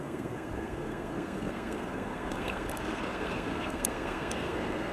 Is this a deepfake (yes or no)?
yes